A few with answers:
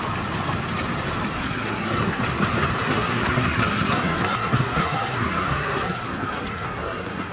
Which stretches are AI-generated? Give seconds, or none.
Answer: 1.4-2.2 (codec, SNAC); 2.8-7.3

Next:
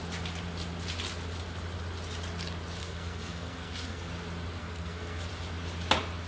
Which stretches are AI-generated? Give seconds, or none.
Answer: 2.8-4.1 (codec, SNAC); 4.6-5.3

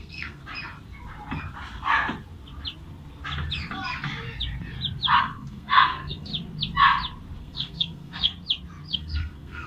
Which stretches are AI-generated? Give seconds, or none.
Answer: 0.0-0.4 (codec, SNAC); 5.2-6.3; 7.4-8.3; 8.9-9.7

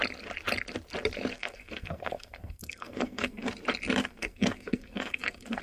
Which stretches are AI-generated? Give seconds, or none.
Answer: 1.3-3.5 (codec, SNAC); 4.0-5.6

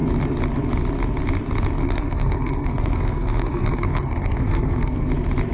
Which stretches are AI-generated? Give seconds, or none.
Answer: 1.8-5.1 (codec, SNAC)

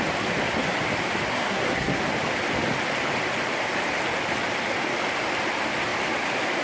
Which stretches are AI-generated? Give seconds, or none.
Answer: 1.3-2.0 (codec, SNAC)

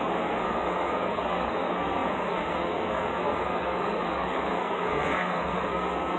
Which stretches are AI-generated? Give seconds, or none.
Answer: 0.0-6.2 (codec, SNAC)

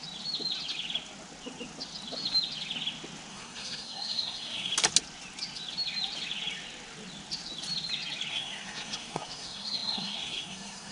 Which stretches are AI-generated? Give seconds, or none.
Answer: 3.3-4.7 (codec, SNAC); 8.3-10.9